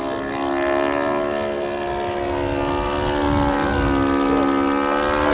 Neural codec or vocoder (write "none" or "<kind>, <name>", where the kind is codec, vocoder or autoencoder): none